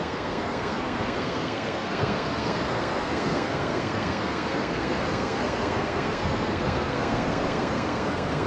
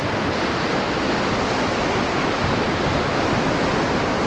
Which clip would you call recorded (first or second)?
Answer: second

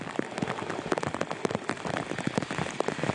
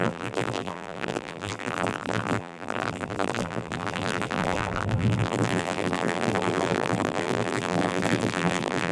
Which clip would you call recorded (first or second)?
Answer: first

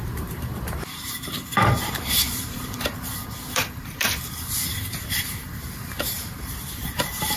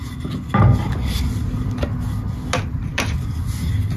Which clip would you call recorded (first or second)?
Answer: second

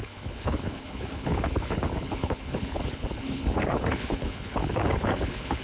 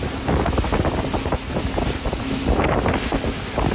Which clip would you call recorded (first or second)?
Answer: second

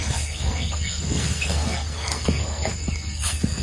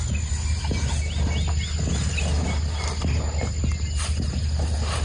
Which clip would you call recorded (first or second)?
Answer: second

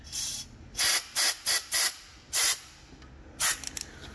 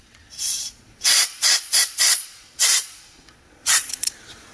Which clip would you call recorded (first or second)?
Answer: first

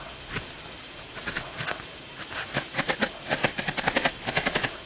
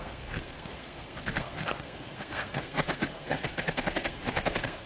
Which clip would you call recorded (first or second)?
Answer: first